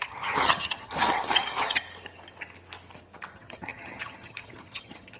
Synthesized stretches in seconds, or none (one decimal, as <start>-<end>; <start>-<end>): 0.0-1.8; 3.3-5.2